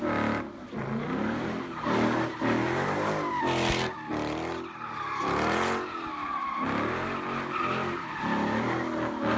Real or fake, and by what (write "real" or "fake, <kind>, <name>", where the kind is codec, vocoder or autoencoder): real